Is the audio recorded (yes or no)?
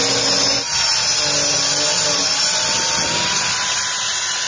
yes